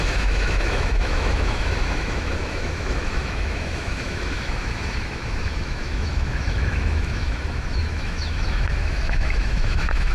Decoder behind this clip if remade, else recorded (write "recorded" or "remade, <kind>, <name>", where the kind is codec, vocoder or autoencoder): remade, autoencoder, DAC-VAE